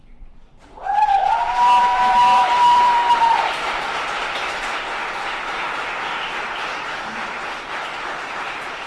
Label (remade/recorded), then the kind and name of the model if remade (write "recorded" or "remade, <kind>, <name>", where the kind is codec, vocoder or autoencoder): remade, vocoder, BigVGAN v2